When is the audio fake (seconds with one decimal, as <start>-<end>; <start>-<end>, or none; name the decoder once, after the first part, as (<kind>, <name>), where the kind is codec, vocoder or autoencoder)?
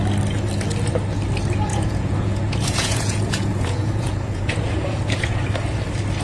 1.7-5.4 (vocoder, Vocos)